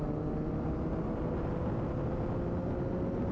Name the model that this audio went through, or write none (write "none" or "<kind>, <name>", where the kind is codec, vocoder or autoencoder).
none